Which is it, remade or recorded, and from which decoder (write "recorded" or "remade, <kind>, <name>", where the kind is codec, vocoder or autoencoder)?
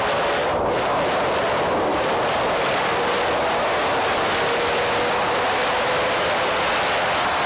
recorded